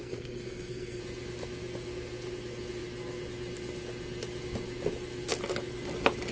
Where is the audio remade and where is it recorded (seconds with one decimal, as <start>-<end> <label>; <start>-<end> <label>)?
0.0-1.0 remade; 1.0-6.3 recorded